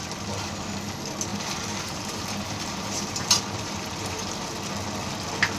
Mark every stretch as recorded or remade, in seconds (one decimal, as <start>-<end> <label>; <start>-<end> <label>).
0.0-1.3 recorded; 1.3-4.5 remade; 4.5-5.6 recorded